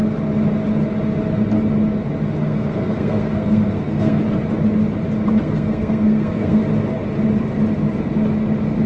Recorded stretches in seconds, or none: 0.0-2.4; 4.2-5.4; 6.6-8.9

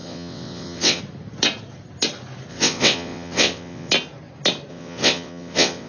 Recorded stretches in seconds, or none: 1.0-2.5; 3.9-4.7

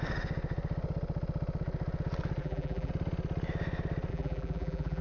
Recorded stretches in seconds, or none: 0.0-2.4; 2.9-4.1